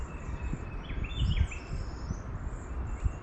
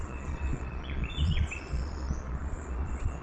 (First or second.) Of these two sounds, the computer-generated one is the second